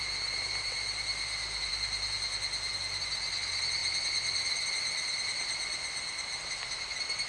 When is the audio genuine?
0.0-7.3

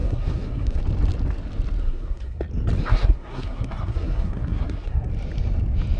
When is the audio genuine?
0.8-1.8; 2.4-2.9; 5.1-6.0

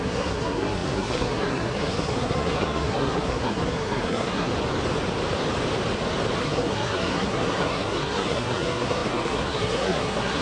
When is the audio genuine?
4.5-6.4

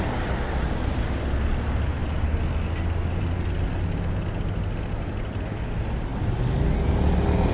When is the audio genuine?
0.0-7.5